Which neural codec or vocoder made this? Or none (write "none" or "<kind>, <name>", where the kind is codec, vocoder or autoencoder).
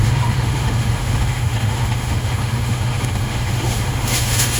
autoencoder, DAC-VAE